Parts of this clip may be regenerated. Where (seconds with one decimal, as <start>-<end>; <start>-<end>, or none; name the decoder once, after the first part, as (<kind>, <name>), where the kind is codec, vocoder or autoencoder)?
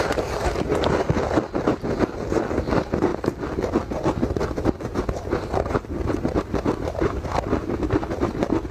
none